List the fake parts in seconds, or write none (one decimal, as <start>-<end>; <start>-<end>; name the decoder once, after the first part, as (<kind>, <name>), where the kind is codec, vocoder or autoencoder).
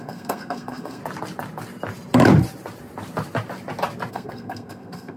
0.0-1.0 (codec, SNAC); 4.1-5.2